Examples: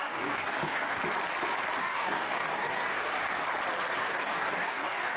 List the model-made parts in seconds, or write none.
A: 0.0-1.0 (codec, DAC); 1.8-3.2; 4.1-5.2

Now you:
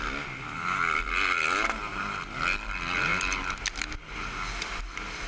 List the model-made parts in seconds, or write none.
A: none

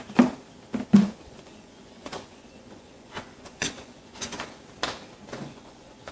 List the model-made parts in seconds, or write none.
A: 0.9-4.6 (vocoder, Vocos); 5.3-6.1

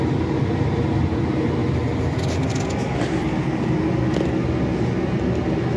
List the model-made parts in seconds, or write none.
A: none

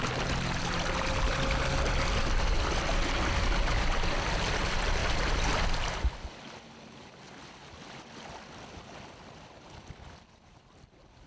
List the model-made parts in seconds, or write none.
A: none

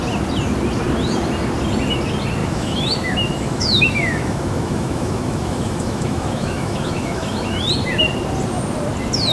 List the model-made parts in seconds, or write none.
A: 2.4-7.6 (autoencoder, DAC-VAE)